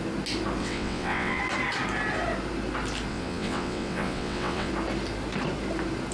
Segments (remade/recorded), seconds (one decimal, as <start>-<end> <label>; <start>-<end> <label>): 0.0-0.6 recorded; 0.6-1.4 remade; 1.4-3.1 recorded; 3.1-4.7 remade; 4.7-6.1 recorded